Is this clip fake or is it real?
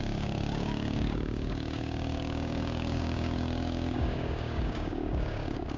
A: fake